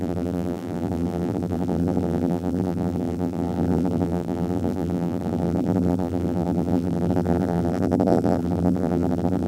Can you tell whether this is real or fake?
fake